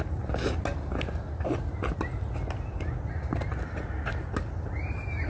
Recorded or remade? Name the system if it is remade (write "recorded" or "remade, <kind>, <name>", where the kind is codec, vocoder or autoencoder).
recorded